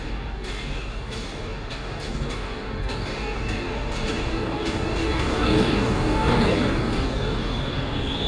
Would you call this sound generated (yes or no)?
yes